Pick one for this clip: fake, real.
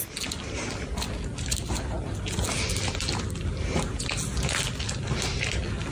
real